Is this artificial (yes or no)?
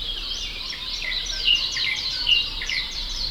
yes